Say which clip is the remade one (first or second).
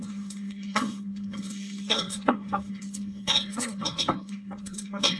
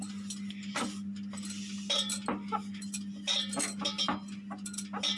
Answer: first